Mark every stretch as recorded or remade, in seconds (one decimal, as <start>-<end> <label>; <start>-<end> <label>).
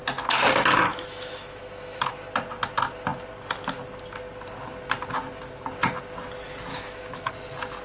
0.0-0.9 recorded; 0.9-2.1 remade; 2.1-6.7 recorded; 6.7-7.3 remade; 7.3-7.8 recorded